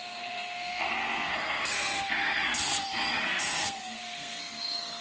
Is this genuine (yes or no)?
no